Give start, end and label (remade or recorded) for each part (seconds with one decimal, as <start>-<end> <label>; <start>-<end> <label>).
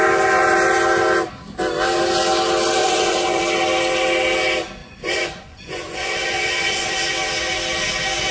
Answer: 0.0-2.8 recorded; 2.8-3.4 remade; 3.4-4.8 recorded; 4.8-6.9 remade; 6.9-8.3 recorded